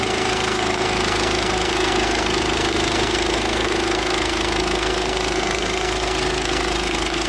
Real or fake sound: fake